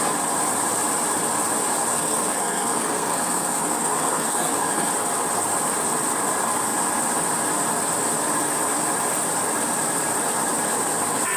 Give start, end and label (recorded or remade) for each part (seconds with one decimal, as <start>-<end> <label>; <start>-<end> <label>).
0.0-1.9 recorded; 1.9-4.9 remade; 4.9-11.4 recorded